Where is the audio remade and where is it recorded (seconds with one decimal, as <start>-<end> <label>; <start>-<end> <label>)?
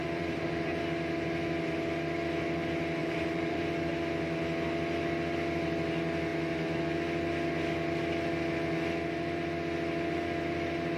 0.0-0.8 remade; 0.8-3.0 recorded; 3.0-3.6 remade; 3.6-11.0 recorded